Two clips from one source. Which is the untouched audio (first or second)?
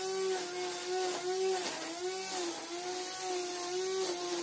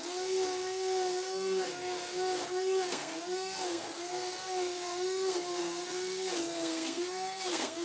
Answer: first